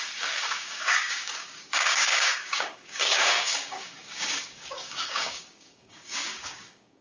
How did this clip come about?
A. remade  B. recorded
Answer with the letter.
A